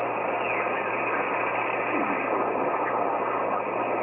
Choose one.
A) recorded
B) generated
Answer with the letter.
A